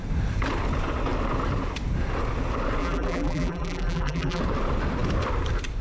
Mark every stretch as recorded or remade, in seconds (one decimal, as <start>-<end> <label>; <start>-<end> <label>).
0.0-2.8 recorded; 2.8-4.4 remade; 4.4-5.8 recorded